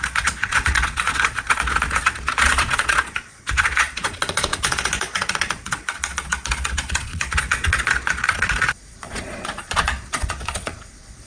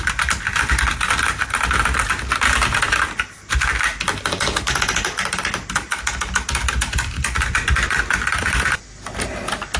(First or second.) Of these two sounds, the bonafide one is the second